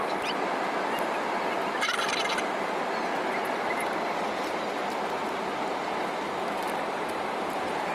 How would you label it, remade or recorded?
recorded